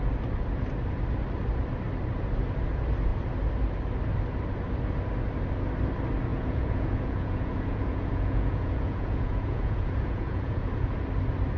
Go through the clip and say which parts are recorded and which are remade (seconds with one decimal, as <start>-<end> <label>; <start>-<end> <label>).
0.0-6.3 recorded; 6.3-11.0 remade; 11.0-11.6 recorded